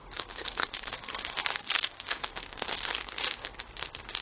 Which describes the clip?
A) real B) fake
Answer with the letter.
B